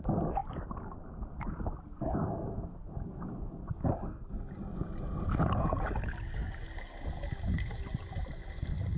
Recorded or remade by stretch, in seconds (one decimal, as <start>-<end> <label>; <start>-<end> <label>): 0.0-9.0 recorded